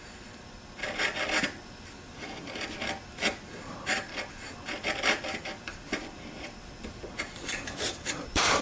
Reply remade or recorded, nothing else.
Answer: remade